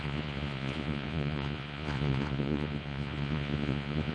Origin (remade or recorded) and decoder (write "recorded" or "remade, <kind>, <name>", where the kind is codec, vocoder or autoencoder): remade, vocoder, Vocos